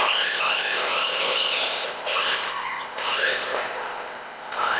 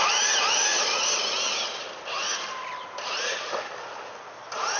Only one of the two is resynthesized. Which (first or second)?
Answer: first